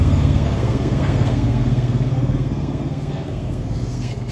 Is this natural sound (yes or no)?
no